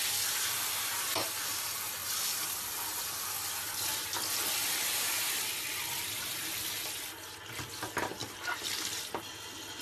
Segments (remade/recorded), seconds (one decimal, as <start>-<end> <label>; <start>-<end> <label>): 0.0-8.2 recorded; 8.2-9.0 remade; 9.0-9.8 recorded